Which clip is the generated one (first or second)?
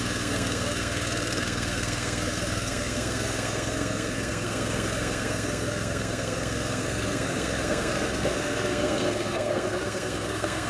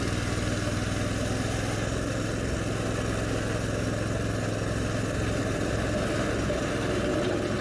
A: first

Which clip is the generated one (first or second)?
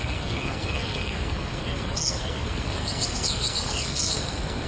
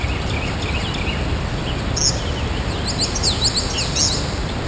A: first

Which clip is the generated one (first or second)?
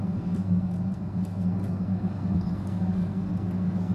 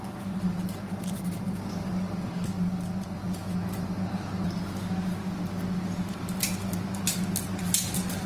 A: first